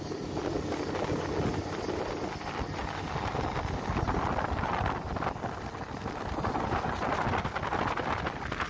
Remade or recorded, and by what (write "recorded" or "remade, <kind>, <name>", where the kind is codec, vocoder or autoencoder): recorded